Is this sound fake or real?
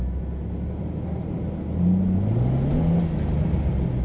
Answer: real